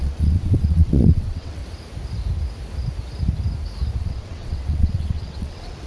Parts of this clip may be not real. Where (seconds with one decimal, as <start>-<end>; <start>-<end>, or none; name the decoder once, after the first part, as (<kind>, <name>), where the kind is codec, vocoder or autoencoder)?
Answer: 0.0-1.6 (vocoder, WaveNeXt); 4.0-5.9